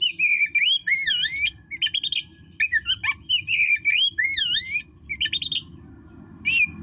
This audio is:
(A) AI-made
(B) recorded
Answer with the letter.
B